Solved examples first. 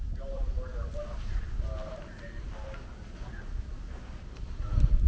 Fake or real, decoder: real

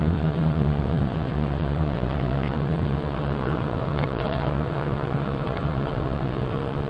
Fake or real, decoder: fake, vocoder, WaveNeXt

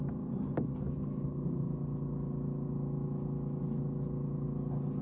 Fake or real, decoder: real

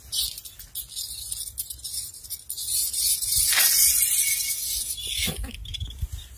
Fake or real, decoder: real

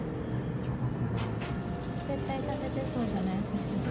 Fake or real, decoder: real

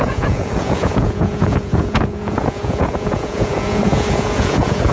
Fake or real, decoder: fake, vocoder, Vocos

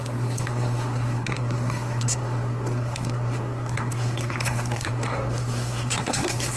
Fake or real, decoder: fake, codec, SNAC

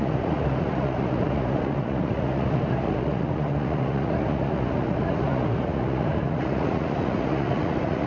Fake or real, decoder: fake, vocoder, Vocos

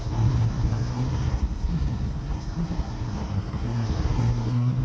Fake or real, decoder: fake, codec, SNAC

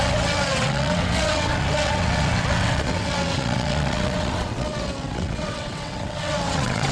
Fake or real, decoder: fake, vocoder, WaveNeXt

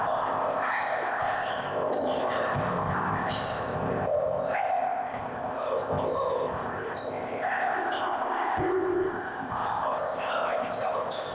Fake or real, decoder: fake, codec, ZipCodec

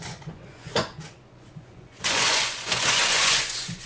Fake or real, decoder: fake, vocoder, Vocos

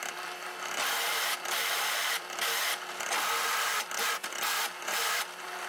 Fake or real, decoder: fake, vocoder, BigVGAN v2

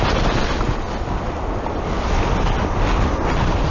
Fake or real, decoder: real